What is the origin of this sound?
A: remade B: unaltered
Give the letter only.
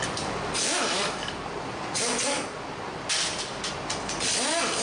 B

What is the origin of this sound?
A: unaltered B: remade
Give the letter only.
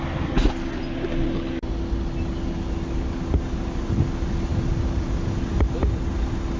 A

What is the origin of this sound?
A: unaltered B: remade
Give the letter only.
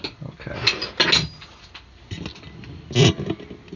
A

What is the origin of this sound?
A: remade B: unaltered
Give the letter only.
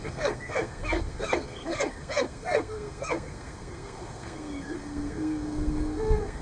A